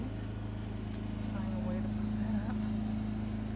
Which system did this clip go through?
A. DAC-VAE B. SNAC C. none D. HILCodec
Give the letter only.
C